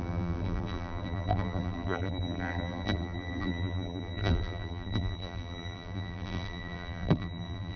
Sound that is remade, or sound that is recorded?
remade